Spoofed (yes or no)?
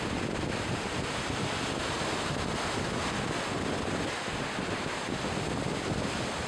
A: no